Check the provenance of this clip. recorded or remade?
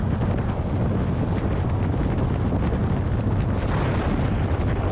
recorded